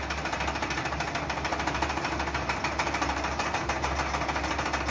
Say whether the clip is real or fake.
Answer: real